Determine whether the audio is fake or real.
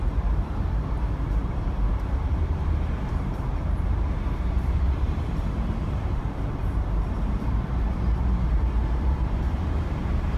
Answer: fake